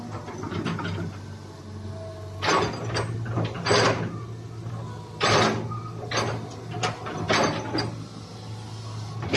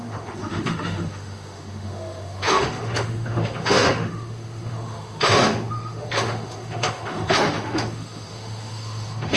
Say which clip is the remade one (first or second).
second